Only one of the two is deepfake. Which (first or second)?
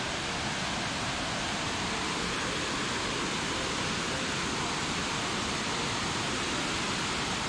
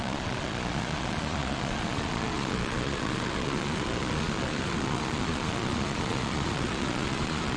second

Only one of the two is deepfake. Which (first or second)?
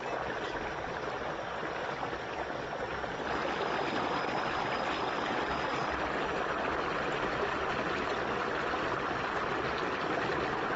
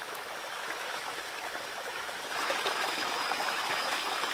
second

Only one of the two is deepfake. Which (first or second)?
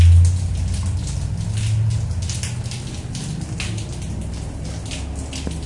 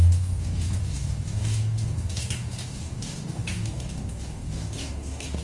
second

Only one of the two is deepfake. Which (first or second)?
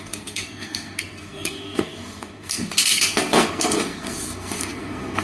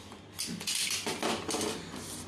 first